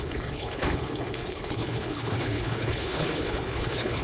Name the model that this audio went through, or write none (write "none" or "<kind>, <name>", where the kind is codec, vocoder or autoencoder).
codec, HILCodec